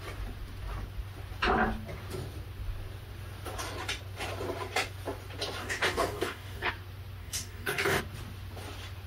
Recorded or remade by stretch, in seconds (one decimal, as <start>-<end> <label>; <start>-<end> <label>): 0.0-5.6 recorded; 5.6-6.7 remade; 6.7-7.2 recorded; 7.2-8.0 remade; 8.0-9.1 recorded